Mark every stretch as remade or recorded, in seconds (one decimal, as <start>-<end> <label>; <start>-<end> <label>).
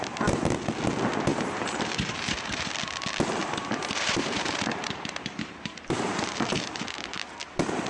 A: 0.0-1.3 recorded; 1.3-2.7 remade; 2.7-3.4 recorded; 3.4-7.0 remade; 7.0-7.9 recorded